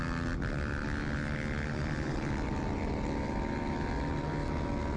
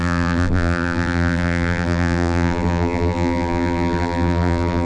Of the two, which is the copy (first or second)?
second